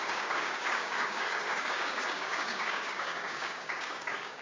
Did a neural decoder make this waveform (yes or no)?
yes